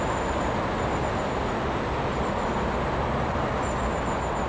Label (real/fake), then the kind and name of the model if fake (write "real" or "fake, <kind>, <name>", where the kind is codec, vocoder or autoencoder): real